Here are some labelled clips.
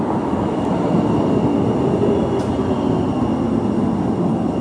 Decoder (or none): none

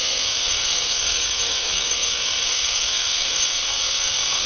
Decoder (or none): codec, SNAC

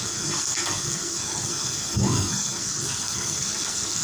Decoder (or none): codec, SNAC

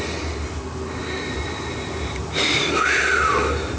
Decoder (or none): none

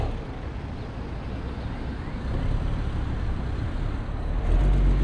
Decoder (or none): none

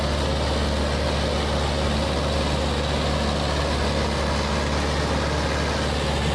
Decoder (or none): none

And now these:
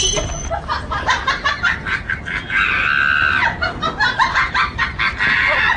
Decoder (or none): none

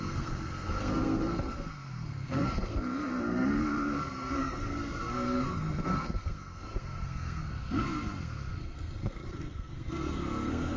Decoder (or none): codec, SNAC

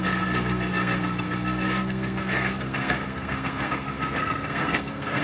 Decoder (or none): codec, SNAC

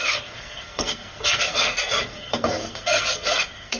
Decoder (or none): codec, SNAC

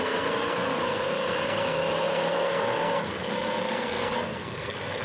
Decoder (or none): codec, SNAC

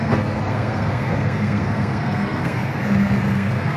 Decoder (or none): codec, SNAC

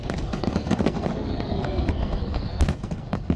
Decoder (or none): codec, SNAC